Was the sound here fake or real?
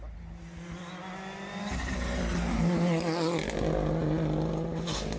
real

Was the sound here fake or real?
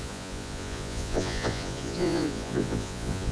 fake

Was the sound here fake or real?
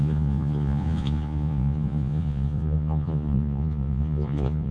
fake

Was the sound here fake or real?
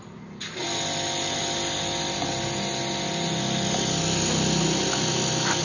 real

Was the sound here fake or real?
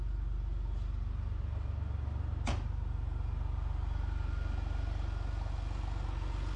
real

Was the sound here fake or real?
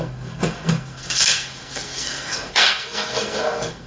fake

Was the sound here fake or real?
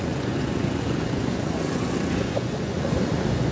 fake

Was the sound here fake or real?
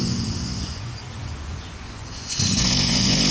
fake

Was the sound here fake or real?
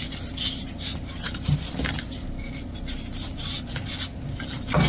real